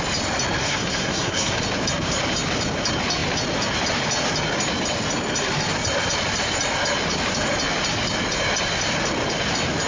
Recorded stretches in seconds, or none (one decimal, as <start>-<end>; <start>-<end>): 0.0-0.6; 1.6-9.9